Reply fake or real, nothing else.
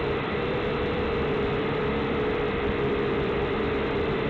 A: fake